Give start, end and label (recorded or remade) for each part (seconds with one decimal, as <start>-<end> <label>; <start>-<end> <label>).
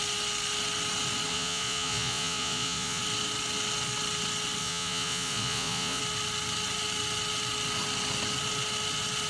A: 0.0-1.3 recorded; 1.3-3.0 remade; 3.0-4.6 recorded; 4.6-6.0 remade; 6.0-9.3 recorded